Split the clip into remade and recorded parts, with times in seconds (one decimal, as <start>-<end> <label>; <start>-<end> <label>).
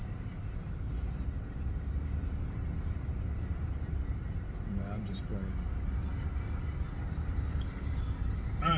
0.0-5.3 remade; 5.3-7.1 recorded; 7.1-8.8 remade